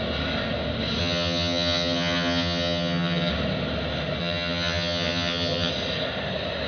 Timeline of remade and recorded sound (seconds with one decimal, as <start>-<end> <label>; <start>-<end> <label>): 0.0-1.0 recorded; 1.0-3.3 remade; 3.3-4.2 recorded; 4.2-5.7 remade; 5.7-6.7 recorded